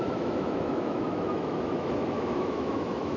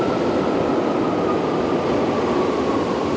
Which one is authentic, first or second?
second